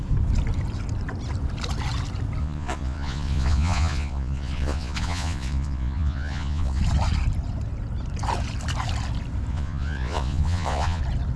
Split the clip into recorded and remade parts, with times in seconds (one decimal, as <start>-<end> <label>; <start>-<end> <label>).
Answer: 0.0-2.4 recorded; 2.4-6.8 remade; 6.8-9.5 recorded; 9.5-11.0 remade; 11.0-11.4 recorded